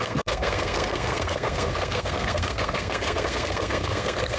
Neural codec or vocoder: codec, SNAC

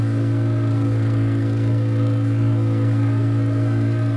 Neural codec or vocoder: codec, SNAC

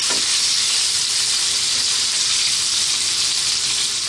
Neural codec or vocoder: none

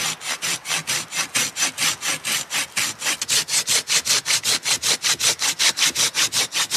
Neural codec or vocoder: none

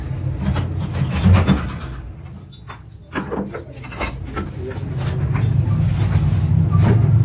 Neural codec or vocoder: none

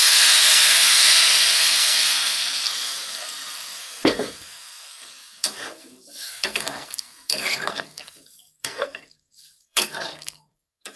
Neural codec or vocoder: codec, SNAC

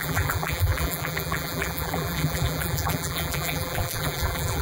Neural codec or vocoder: vocoder, BigVGAN v2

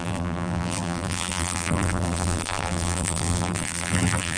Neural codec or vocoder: vocoder, BigVGAN v2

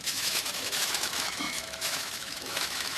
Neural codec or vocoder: autoencoder, DAC-VAE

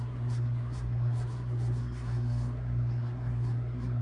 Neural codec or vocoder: codec, SNAC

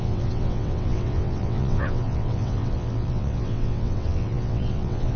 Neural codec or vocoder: vocoder, WaveNeXt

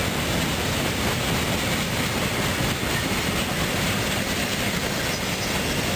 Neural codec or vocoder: none